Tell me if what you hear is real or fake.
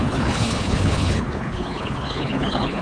fake